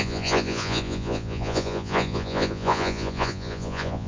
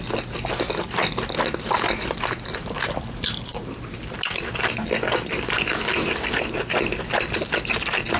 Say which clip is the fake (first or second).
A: first